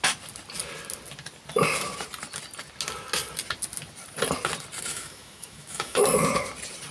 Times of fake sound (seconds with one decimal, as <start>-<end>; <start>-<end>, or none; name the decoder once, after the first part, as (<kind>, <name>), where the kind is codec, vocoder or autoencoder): 4.9-6.0 (autoencoder, DAC-VAE)